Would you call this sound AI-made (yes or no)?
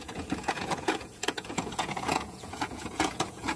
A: yes